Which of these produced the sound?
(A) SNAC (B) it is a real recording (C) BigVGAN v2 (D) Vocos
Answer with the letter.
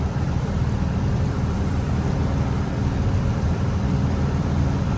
C